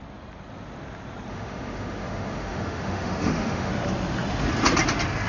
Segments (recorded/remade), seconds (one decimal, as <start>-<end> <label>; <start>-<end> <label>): 0.0-1.3 recorded; 1.3-3.7 remade; 3.7-5.3 recorded